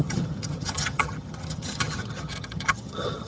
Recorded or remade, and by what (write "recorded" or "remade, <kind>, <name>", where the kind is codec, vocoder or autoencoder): remade, vocoder, HiFi-GAN